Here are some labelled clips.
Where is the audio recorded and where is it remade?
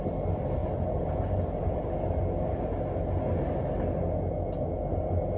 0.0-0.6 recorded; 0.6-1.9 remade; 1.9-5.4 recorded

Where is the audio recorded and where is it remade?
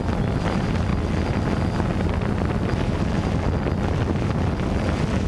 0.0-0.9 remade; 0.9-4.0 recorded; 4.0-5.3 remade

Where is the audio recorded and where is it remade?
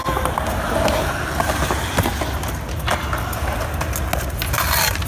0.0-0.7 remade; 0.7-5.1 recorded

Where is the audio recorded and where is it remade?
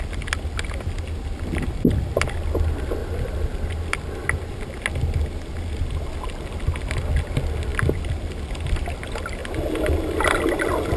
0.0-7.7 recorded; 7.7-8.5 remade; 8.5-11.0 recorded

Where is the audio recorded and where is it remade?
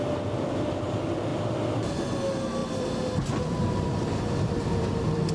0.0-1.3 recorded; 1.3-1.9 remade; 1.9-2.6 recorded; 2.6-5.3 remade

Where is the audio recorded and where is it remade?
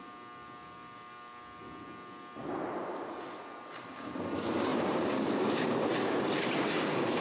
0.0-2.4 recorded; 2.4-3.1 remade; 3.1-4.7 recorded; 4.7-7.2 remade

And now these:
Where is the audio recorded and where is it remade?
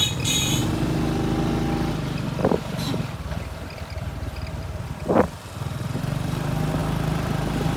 0.0-0.6 remade; 0.6-1.9 recorded; 1.9-7.8 remade